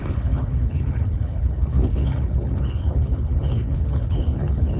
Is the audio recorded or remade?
remade